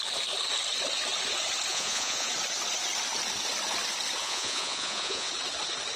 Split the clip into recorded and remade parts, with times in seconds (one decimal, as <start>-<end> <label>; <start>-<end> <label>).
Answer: 0.0-1.7 recorded; 1.7-2.3 remade; 2.3-4.2 recorded; 4.2-5.3 remade; 5.3-6.0 recorded